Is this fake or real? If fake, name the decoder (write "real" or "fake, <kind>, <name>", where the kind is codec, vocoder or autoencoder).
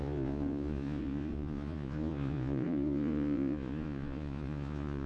fake, vocoder, Vocos